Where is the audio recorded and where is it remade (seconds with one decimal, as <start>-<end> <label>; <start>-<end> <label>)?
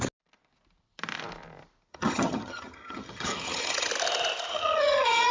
0.0-1.9 recorded; 1.9-3.9 remade; 3.9-4.5 recorded; 4.5-5.3 remade